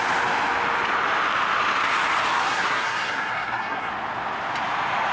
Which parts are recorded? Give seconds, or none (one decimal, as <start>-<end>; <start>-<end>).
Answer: 0.0-2.4; 3.9-5.1